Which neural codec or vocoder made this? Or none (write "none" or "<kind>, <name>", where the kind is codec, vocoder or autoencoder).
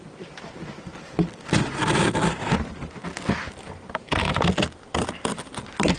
none